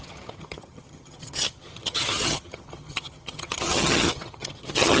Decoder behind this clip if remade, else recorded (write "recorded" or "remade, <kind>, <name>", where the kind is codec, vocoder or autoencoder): remade, vocoder, HiFi-GAN